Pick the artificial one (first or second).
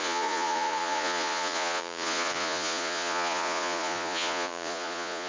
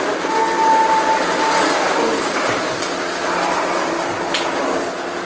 first